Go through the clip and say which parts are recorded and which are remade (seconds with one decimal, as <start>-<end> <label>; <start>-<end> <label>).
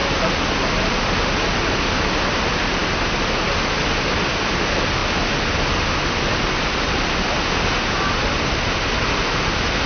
0.0-9.9 recorded